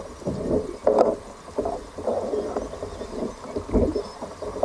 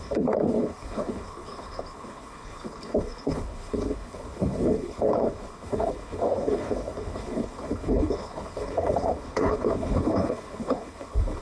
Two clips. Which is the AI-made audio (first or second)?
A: second